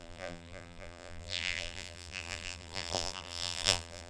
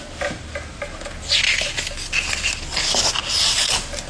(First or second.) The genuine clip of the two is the second